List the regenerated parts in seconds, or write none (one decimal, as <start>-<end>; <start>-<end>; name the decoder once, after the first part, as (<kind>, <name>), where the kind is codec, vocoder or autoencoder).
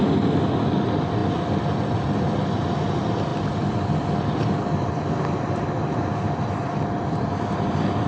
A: none